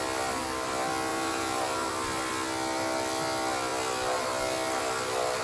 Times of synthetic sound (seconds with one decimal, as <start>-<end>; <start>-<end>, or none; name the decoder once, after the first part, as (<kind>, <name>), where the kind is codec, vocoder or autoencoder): 1.1-1.9 (vocoder, BigVGAN v2)

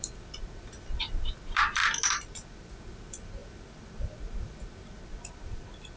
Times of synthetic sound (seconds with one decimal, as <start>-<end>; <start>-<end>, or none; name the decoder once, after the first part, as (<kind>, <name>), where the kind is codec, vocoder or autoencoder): none

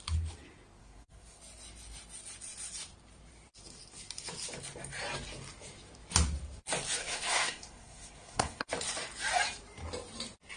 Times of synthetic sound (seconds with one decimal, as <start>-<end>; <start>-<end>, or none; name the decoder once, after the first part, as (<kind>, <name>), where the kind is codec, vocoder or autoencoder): 0.8-1.4 (codec, SNAC); 7.0-8.7

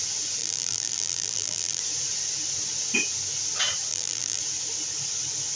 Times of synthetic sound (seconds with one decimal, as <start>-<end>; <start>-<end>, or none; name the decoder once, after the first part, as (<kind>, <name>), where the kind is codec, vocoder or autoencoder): 0.4-1.8 (vocoder, BigVGAN v2); 3.9-4.4